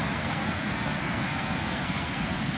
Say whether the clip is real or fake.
fake